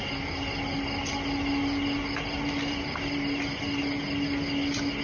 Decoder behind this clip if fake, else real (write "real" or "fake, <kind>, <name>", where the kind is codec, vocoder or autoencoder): real